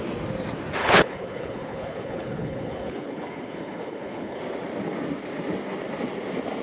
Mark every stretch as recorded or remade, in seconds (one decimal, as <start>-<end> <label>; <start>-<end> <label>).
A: 0.0-0.8 recorded; 0.8-4.4 remade; 4.4-6.6 recorded